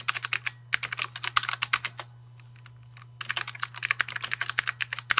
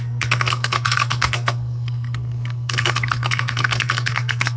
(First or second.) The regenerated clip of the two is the second